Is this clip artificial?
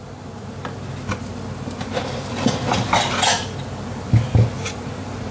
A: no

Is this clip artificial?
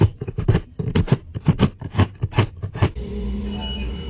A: no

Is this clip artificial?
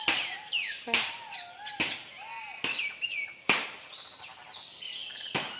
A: no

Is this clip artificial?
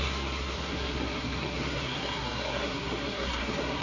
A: yes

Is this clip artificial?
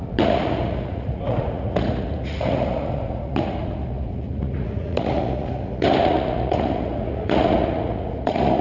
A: yes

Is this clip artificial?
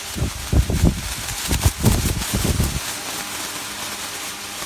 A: no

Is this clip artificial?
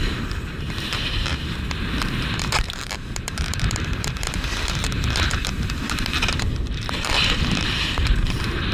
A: yes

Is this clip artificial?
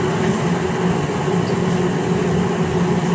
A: no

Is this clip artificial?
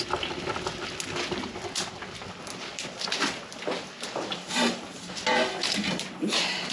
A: no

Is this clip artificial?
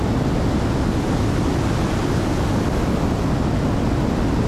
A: no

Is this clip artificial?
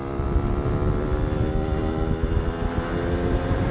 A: no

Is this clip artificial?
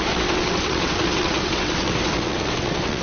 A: yes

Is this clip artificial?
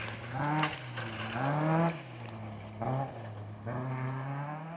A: no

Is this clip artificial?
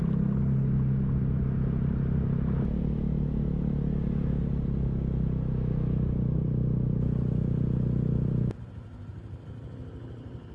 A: no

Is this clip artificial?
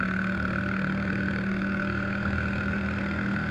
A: yes